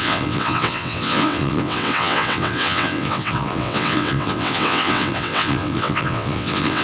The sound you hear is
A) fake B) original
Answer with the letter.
A